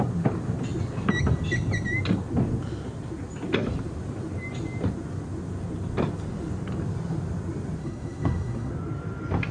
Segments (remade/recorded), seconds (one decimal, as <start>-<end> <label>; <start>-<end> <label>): 0.0-7.8 recorded; 7.8-8.7 remade; 8.7-9.5 recorded